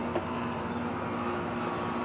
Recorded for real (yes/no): yes